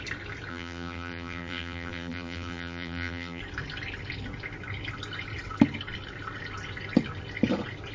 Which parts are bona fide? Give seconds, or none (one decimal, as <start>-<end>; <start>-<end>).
0.0-0.5; 3.4-7.9